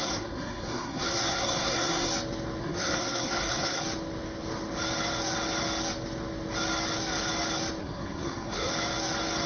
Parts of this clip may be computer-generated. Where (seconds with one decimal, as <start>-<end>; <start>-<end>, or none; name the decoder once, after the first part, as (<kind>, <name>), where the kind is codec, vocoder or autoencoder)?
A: 0.0-2.1 (codec, SNAC); 2.6-3.8; 7.8-8.7

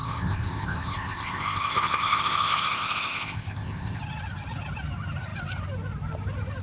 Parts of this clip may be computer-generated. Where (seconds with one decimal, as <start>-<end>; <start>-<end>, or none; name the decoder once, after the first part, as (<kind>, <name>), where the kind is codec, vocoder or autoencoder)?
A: 0.0-4.0 (codec, ZipCodec)

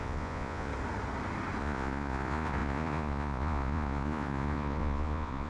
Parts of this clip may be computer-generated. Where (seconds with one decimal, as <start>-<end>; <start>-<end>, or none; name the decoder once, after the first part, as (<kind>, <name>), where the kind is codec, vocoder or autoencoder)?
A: 0.0-0.7 (vocoder, Vocos); 1.6-5.5